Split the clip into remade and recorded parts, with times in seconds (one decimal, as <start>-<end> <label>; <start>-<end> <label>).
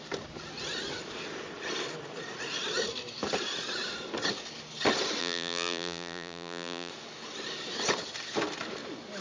0.0-5.2 recorded; 5.2-6.9 remade; 6.9-9.2 recorded